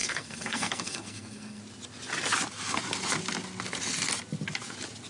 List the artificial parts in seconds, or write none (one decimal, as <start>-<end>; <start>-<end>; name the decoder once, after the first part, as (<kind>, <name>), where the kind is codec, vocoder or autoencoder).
0.0-1.6 (codec, SNAC)